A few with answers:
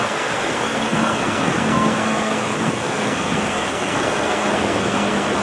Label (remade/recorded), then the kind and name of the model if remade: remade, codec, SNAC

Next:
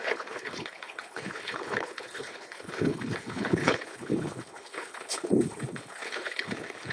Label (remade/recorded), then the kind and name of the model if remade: remade, codec, HILCodec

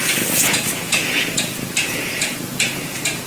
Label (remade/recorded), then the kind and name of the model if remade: remade, vocoder, Vocos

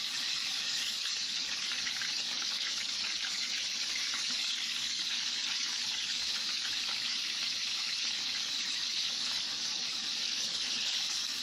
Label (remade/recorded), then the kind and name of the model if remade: remade, codec, DAC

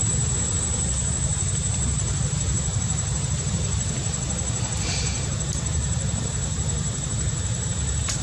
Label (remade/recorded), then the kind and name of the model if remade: remade, vocoder, BigVGAN v2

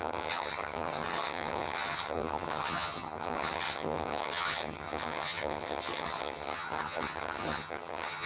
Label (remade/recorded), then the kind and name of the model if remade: remade, vocoder, HiFi-GAN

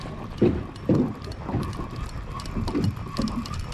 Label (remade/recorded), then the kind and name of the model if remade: recorded